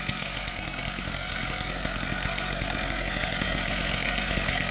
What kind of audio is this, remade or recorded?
remade